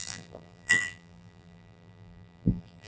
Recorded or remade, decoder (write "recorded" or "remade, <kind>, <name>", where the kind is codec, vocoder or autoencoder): remade, vocoder, BigVGAN v2